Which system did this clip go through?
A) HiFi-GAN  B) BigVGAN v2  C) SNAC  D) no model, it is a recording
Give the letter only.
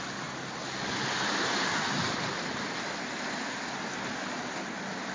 D